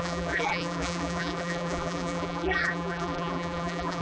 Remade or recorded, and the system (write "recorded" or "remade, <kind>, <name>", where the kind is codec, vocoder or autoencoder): remade, vocoder, BigVGAN v2